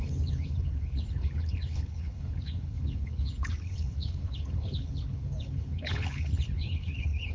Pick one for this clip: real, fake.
fake